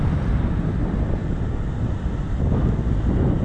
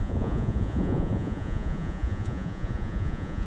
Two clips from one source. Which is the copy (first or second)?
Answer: second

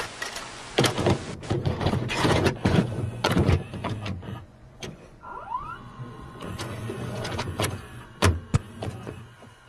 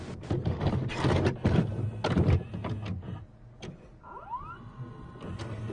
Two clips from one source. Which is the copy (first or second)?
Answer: first